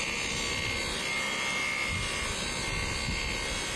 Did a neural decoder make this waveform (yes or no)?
no